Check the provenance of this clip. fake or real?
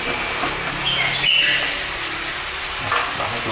real